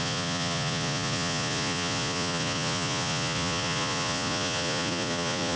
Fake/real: fake